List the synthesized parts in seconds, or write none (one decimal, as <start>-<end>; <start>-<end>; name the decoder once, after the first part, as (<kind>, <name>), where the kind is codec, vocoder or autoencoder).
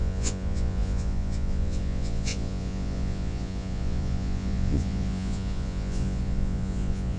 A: 0.0-7.2 (vocoder, Vocos)